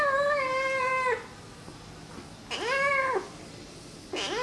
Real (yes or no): yes